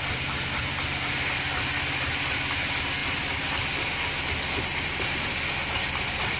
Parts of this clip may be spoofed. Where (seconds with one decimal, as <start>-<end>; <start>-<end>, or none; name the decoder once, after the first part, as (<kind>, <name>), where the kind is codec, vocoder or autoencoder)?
none